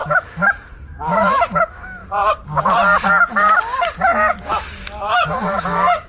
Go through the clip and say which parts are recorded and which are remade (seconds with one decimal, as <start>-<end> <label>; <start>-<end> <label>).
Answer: 0.0-2.0 remade; 2.0-4.3 recorded; 4.3-6.1 remade